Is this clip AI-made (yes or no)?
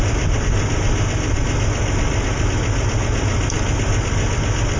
no